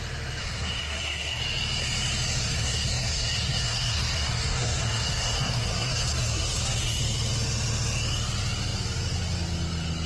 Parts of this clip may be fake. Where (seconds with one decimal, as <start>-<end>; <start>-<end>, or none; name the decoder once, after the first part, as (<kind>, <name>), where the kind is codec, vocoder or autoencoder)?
0.4-1.4 (codec, SNAC); 2.4-7.0